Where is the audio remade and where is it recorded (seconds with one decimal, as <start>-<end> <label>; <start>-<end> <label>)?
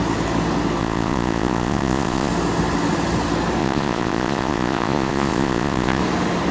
0.0-0.8 recorded; 0.8-2.3 remade; 2.3-3.6 recorded; 3.6-6.0 remade; 6.0-6.5 recorded